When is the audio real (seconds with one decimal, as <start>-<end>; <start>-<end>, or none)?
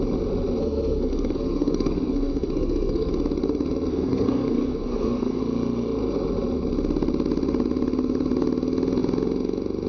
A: 0.0-0.6; 3.1-3.9; 5.4-9.9